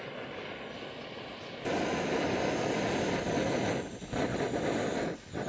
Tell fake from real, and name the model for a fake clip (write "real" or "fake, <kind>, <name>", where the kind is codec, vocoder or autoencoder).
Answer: real